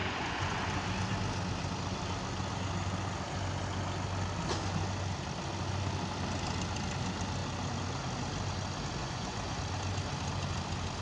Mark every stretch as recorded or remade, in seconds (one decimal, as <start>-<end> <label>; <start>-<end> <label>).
0.0-0.6 remade; 0.6-9.0 recorded; 9.0-9.6 remade; 9.6-11.0 recorded